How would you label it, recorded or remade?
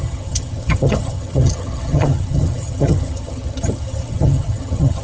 remade